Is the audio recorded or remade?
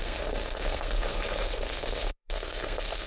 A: remade